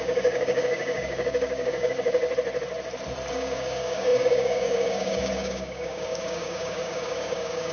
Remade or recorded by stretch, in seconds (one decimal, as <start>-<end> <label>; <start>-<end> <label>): 0.0-2.2 remade; 2.2-3.3 recorded; 3.3-7.7 remade